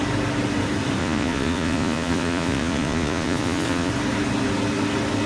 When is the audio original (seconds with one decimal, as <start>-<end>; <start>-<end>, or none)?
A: 0.0-1.0; 3.9-5.3